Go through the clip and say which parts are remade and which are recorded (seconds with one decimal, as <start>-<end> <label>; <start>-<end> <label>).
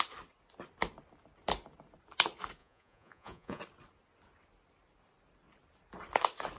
0.0-2.6 recorded; 2.6-3.6 remade; 3.6-6.6 recorded